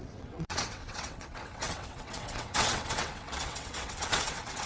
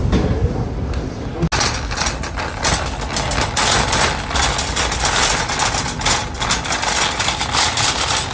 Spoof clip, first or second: first